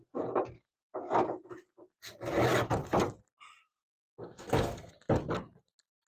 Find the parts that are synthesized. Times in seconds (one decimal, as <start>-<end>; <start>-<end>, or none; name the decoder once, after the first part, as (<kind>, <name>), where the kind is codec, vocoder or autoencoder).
4.2-4.9 (codec, SNAC)

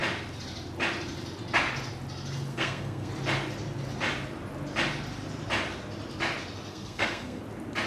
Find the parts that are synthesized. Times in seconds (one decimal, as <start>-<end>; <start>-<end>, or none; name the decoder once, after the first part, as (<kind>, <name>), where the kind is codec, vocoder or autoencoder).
2.5-3.1 (codec, SNAC); 6.7-7.4

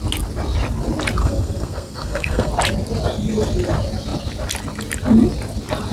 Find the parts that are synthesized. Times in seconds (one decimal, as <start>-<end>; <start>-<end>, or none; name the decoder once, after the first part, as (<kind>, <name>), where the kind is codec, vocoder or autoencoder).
1.2-2.5 (codec, SNAC)

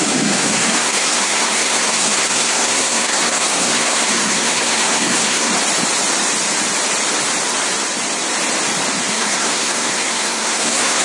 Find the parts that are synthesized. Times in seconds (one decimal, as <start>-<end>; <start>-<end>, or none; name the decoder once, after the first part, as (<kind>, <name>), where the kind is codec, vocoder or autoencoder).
0.0-5.5 (codec, SNAC); 9.1-11.0